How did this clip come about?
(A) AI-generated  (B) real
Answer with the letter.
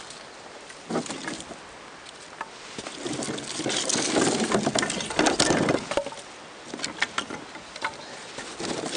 B